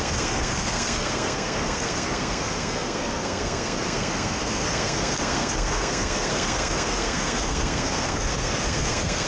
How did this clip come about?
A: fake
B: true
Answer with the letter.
A